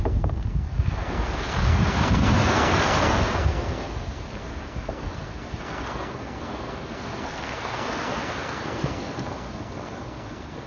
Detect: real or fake fake